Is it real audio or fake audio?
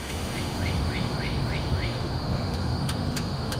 fake